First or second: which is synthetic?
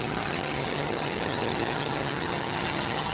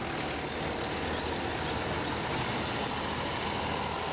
first